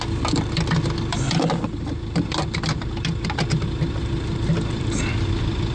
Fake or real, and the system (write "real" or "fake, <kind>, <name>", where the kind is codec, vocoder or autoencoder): real